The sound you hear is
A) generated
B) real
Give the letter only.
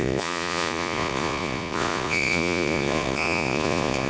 A